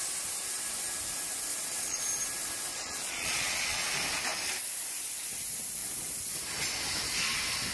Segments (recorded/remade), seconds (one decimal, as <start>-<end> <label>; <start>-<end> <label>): 0.0-1.5 recorded; 1.5-2.1 remade; 2.1-2.7 recorded; 2.7-3.9 remade; 3.9-7.7 recorded